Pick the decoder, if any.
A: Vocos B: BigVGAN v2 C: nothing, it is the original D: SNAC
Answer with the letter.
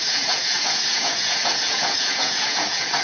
A